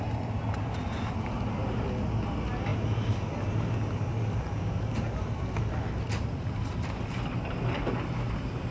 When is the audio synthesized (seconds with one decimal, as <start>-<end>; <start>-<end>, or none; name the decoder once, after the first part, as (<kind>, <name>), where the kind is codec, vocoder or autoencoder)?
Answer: none